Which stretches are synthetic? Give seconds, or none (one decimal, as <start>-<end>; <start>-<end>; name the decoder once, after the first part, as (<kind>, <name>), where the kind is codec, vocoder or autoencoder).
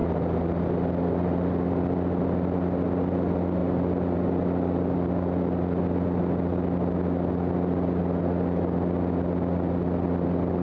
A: none